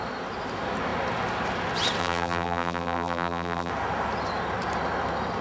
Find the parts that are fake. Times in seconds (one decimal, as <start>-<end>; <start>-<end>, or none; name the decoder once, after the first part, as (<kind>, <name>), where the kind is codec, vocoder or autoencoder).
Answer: 2.0-3.7 (vocoder, BigVGAN v2)